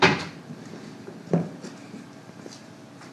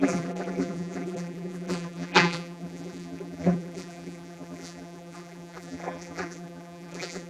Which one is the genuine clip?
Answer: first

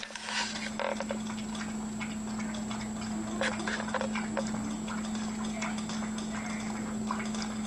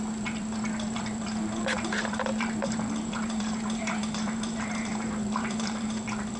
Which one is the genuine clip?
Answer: first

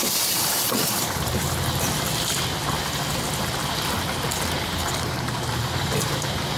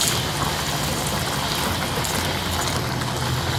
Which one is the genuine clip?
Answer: second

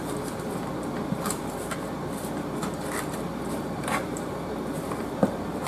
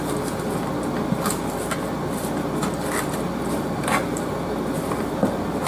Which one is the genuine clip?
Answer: second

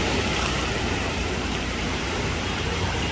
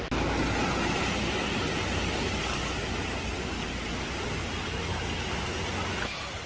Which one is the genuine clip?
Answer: second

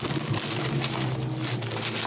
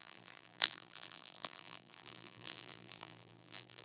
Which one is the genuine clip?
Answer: first